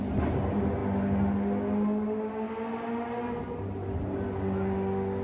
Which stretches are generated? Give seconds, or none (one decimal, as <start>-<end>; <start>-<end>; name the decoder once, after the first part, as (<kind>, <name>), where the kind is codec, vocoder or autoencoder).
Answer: none